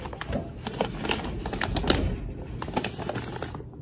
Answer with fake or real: real